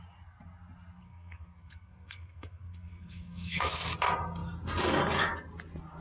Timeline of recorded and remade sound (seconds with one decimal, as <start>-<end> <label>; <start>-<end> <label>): 0.0-1.0 recorded; 1.0-3.7 remade; 3.7-6.0 recorded